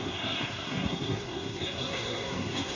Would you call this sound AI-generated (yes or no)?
yes